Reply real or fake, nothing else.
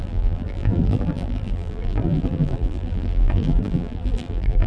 fake